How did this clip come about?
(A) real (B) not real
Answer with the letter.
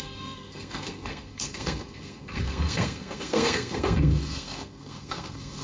B